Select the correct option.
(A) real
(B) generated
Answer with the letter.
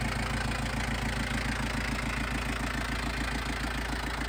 A